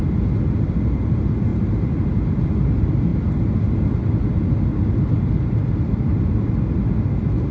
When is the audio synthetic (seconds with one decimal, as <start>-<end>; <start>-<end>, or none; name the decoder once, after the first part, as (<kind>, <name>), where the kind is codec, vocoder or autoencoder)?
1.5-2.1 (vocoder, BigVGAN v2); 4.7-6.2